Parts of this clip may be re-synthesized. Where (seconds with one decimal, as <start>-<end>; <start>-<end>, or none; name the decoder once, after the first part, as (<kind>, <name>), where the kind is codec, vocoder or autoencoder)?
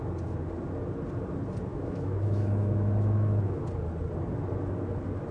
1.7-3.7 (autoencoder, DAC-VAE)